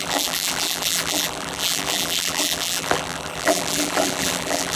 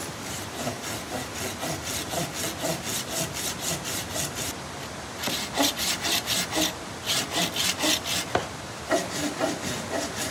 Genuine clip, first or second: second